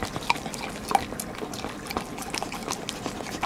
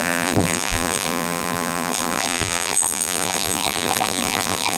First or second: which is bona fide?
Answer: first